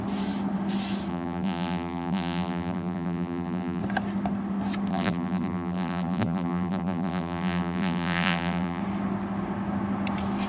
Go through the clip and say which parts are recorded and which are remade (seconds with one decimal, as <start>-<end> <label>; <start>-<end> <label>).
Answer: 0.0-1.1 recorded; 1.1-3.8 remade; 3.8-4.9 recorded; 4.9-8.8 remade; 8.8-10.5 recorded

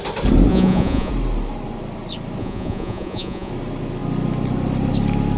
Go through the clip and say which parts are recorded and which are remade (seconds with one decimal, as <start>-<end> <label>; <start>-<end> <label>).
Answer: 0.0-0.5 recorded; 0.5-1.1 remade; 1.1-2.4 recorded; 2.4-3.5 remade; 3.5-5.4 recorded